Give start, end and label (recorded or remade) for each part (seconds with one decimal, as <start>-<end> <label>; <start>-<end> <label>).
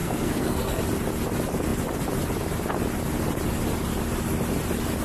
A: 0.0-0.8 remade; 0.8-5.0 recorded